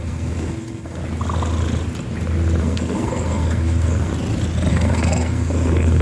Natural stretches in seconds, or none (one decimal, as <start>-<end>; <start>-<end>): 1.0-2.6; 4.1-4.7